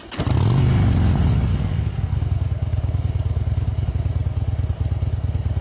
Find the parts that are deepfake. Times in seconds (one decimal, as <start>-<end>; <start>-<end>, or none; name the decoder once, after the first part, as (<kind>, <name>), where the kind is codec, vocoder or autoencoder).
1.5-3.9 (codec, DAC)